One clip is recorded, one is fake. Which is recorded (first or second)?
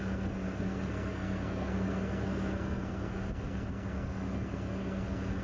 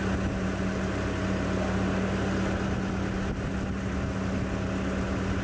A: second